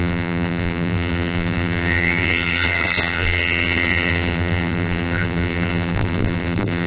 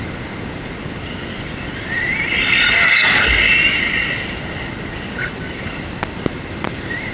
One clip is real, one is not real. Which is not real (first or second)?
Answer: first